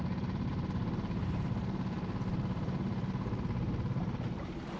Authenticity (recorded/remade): remade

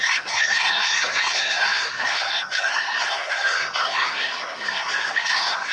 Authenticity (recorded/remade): remade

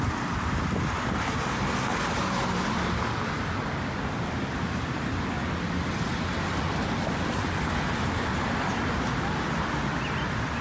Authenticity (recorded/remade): recorded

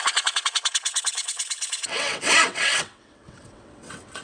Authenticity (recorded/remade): remade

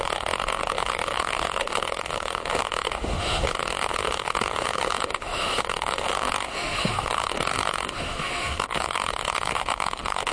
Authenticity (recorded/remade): remade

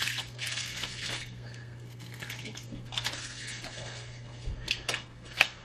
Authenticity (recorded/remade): remade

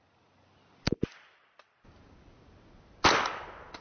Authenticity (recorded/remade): recorded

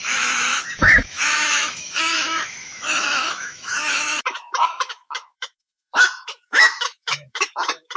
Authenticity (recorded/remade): remade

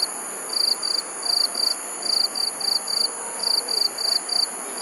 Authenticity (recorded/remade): recorded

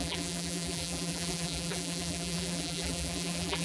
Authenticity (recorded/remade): remade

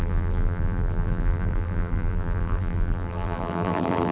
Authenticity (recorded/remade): remade